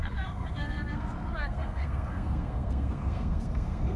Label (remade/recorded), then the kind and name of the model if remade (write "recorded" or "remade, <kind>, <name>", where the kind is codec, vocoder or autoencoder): remade, codec, SNAC